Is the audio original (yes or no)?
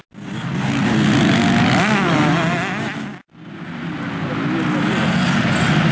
yes